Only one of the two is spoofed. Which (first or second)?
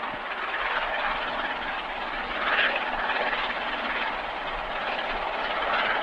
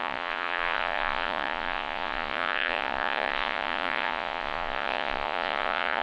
second